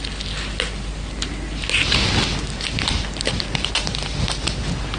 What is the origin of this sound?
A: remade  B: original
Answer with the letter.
B